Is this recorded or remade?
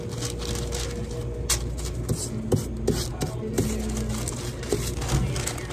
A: recorded